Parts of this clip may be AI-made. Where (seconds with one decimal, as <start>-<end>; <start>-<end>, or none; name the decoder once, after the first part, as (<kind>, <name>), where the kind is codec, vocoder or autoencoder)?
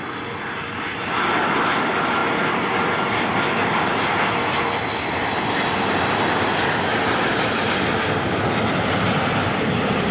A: none